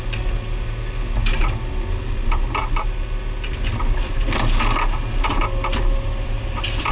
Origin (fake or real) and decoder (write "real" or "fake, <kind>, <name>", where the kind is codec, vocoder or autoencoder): real